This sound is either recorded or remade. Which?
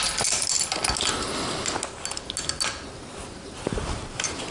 recorded